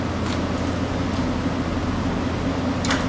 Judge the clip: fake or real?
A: real